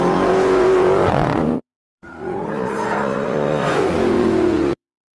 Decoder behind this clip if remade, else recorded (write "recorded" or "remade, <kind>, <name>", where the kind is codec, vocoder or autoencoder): remade, vocoder, Vocos